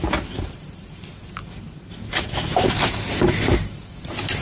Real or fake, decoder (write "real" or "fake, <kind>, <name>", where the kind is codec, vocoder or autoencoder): fake, vocoder, BigVGAN v2